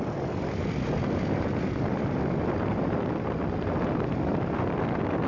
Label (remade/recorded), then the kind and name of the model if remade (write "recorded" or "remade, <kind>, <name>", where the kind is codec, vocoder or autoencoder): remade, vocoder, BigVGAN v2